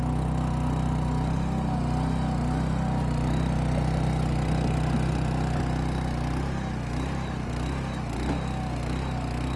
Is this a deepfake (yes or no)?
no